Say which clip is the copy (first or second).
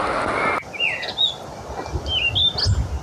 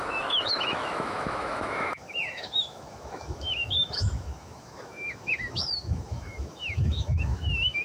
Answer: second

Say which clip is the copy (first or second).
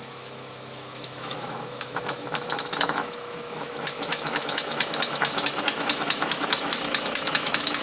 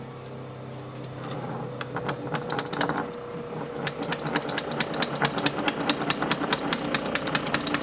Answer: first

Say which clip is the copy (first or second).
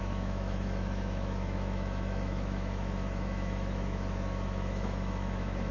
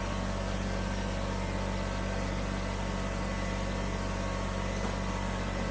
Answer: first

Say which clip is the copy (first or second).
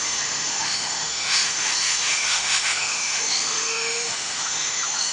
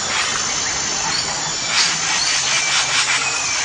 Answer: first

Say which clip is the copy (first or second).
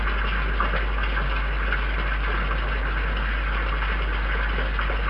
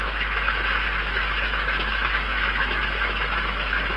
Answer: second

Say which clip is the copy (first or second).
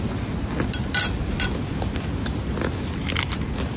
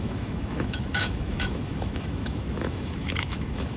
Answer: second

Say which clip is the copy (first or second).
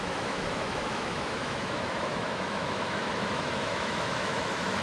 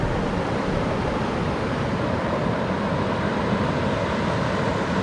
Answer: first